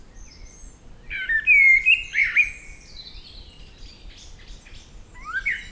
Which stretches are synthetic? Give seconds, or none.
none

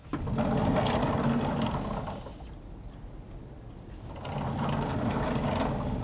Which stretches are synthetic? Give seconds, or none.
none

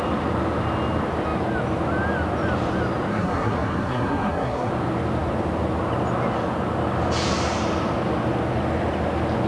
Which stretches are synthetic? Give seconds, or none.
3.1-4.7 (codec, SNAC)